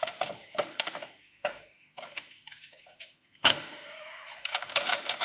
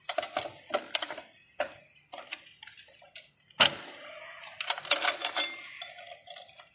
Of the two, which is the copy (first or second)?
first